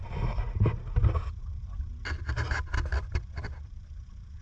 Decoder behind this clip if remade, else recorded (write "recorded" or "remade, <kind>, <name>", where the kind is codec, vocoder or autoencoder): recorded